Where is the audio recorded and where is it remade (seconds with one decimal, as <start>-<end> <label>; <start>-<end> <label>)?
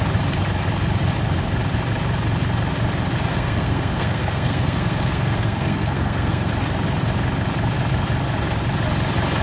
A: 0.0-3.3 recorded; 3.3-6.5 remade; 6.5-9.4 recorded